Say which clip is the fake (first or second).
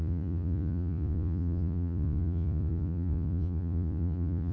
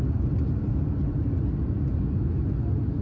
first